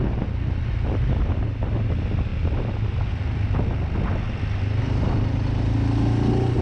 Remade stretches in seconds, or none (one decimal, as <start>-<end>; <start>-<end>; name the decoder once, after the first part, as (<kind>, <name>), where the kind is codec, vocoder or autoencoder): none